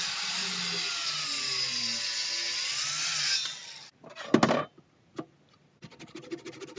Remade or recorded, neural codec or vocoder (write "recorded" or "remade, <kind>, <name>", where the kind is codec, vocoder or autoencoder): recorded